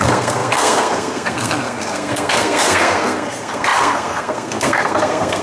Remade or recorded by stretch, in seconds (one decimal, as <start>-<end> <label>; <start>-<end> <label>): 0.0-5.4 remade

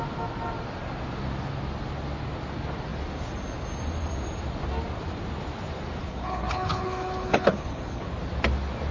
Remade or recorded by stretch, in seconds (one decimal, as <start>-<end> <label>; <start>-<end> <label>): 0.0-6.0 recorded; 6.0-8.1 remade; 8.1-8.9 recorded

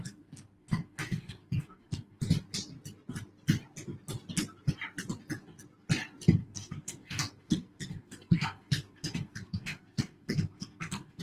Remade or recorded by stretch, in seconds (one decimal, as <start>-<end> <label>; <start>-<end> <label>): 0.0-2.2 remade; 2.2-6.4 recorded; 6.4-11.2 remade

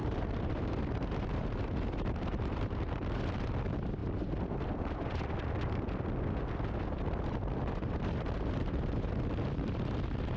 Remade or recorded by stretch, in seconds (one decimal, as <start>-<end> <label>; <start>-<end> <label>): 0.0-3.2 remade; 3.2-7.4 recorded; 7.4-9.9 remade; 9.9-10.4 recorded

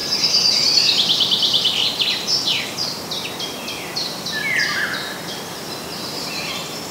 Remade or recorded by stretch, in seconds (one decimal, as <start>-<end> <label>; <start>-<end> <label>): 0.0-6.9 recorded